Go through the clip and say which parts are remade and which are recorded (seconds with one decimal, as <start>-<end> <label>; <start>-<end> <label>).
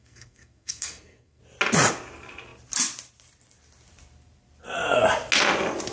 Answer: 0.0-1.4 remade; 1.4-5.9 recorded